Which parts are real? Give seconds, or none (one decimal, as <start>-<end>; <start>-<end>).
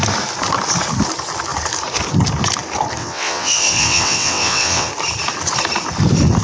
0.0-3.0; 4.9-6.4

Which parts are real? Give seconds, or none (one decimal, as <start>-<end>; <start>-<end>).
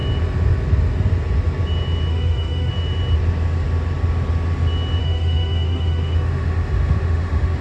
0.0-2.1; 2.7-5.0